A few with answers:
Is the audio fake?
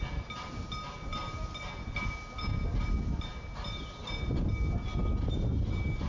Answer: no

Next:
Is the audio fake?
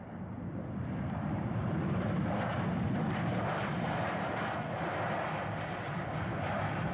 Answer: no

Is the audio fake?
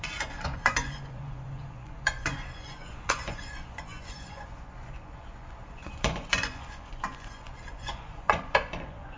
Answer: yes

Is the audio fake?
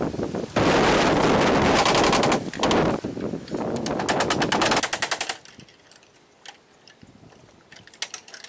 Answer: no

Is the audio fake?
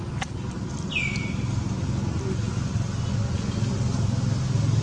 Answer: no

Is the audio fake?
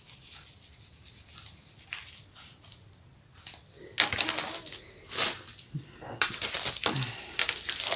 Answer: no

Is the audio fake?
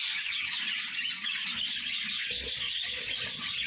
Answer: yes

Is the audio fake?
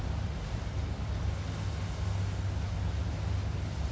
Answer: no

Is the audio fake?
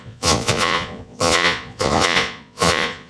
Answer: yes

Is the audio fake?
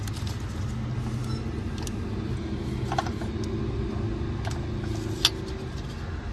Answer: no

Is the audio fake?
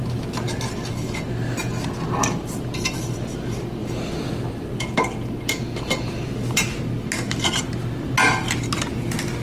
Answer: no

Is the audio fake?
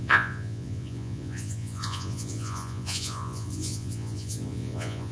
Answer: yes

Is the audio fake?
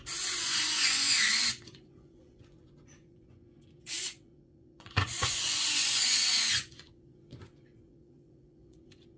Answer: yes